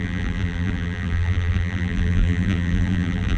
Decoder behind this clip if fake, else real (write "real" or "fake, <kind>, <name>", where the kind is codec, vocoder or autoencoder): fake, vocoder, BigVGAN v2